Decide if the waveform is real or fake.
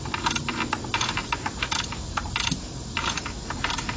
real